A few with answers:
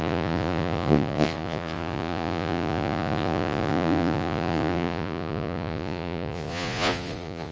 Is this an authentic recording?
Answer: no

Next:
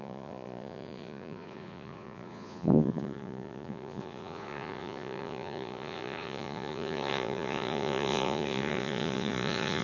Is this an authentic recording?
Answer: no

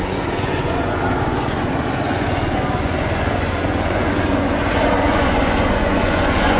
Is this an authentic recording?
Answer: no